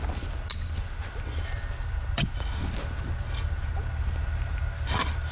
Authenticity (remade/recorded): recorded